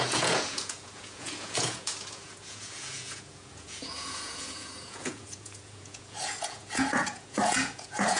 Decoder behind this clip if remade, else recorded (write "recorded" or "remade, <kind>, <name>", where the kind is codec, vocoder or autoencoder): remade, vocoder, Vocos